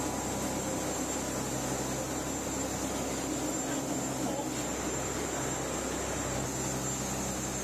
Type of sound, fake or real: real